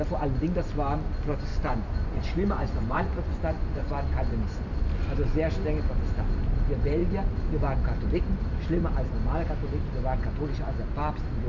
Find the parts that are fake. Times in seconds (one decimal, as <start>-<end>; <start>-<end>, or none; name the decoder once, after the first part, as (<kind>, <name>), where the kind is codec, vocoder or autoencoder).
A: 1.5-3.9 (vocoder, Vocos)